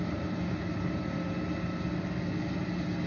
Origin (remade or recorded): recorded